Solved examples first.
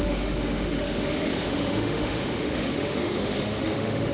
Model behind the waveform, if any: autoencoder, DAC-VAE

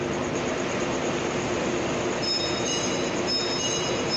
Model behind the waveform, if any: none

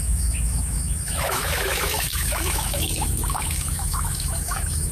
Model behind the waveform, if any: autoencoder, DAC-VAE